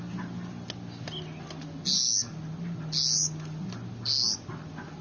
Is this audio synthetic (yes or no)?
no